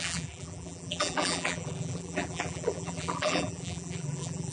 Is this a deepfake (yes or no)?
yes